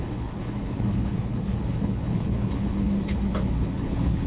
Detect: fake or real fake